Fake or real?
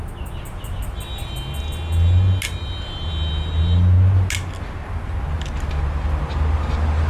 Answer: real